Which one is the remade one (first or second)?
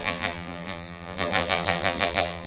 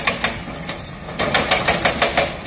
first